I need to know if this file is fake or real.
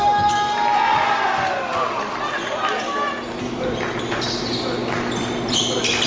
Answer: real